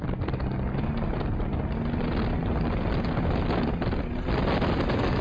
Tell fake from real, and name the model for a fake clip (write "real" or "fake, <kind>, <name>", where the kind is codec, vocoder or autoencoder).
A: real